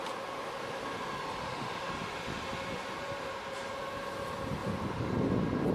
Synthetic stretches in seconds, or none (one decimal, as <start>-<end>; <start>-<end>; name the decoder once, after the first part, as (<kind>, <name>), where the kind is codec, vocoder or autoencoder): 1.4-1.9 (autoencoder, DAC-VAE)